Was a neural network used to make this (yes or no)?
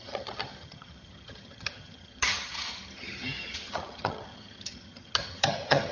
yes